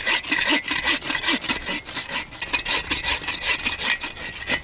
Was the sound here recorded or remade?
recorded